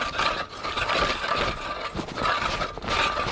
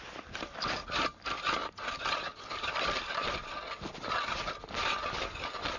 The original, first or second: first